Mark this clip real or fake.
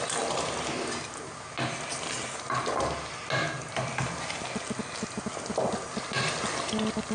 real